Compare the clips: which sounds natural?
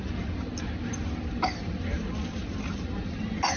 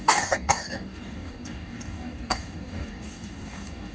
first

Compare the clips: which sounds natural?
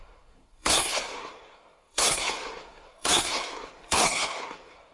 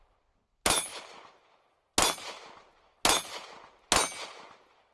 second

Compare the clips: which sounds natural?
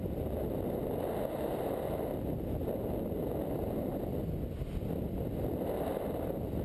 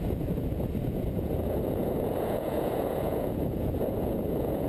first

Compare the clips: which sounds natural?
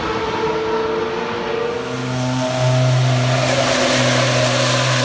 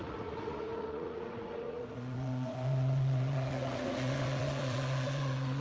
first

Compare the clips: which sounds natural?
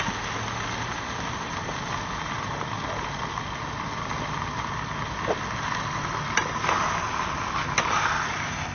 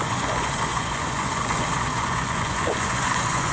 first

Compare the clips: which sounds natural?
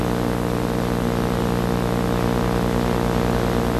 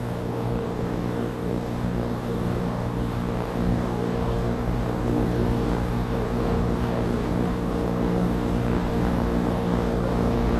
first